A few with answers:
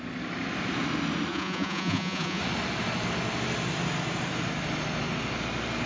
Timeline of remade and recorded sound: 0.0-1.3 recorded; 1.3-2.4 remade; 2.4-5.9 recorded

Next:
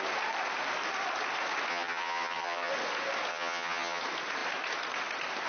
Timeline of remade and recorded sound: 0.0-1.7 recorded; 1.7-2.7 remade; 2.7-3.3 recorded; 3.3-4.0 remade; 4.0-5.5 recorded

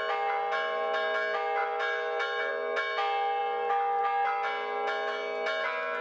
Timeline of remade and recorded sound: 0.0-6.0 recorded

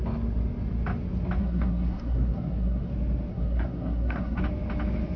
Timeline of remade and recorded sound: 0.0-1.4 recorded; 1.4-2.9 remade; 2.9-3.3 recorded; 3.3-4.4 remade; 4.4-5.2 recorded

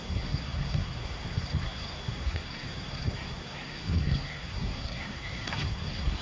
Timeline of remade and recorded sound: 0.0-6.2 remade